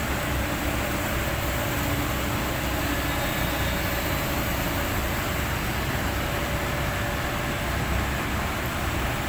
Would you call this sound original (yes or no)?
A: yes